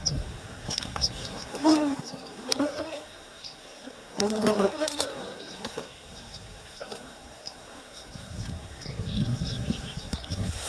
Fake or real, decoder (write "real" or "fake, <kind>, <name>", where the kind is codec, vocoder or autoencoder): fake, codec, SNAC